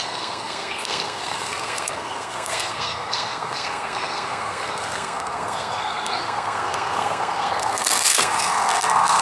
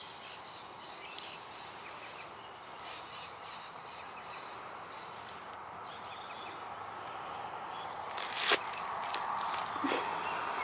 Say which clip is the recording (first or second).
second